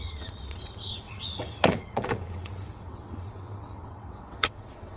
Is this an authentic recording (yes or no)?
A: no